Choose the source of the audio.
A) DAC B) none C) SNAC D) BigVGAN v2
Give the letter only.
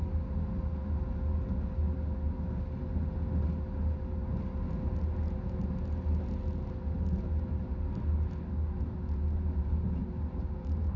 B